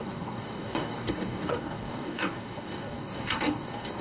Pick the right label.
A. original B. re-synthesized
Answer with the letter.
B